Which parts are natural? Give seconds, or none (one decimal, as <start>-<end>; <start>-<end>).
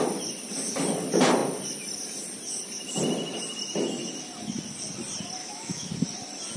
0.0-5.4; 5.9-6.6